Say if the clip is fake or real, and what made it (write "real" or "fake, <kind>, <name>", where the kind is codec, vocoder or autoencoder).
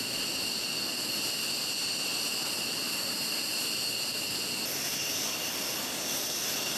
real